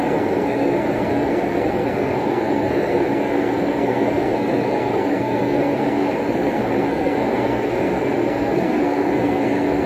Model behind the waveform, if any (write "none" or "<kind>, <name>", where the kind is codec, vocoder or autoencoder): codec, SNAC